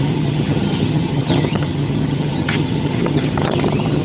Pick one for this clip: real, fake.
fake